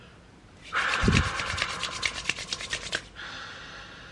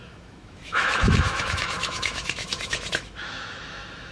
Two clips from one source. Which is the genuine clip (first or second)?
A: first